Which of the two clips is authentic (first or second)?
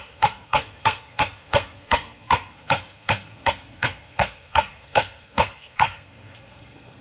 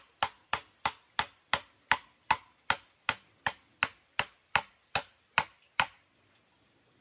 second